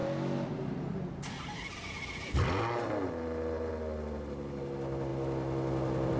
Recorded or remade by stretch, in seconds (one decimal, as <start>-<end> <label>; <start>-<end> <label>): 0.0-6.2 recorded